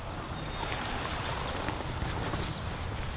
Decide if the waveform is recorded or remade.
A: recorded